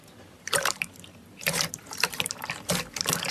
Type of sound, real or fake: fake